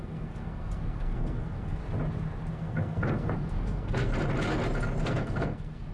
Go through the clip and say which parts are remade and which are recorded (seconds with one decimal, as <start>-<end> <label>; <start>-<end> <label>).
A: 0.0-1.8 remade; 1.8-2.5 recorded; 2.5-4.1 remade; 4.1-5.0 recorded; 5.0-5.9 remade